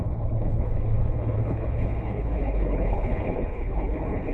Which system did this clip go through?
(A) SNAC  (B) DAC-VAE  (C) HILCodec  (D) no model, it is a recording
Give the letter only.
C